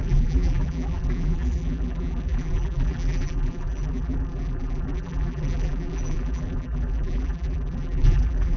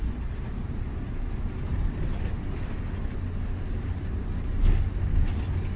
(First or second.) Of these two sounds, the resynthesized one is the first